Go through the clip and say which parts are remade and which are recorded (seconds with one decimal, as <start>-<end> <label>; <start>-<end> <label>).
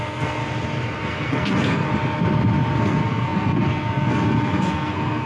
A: 0.0-0.4 remade; 0.4-1.0 recorded; 1.0-1.9 remade; 1.9-2.8 recorded; 2.8-5.3 remade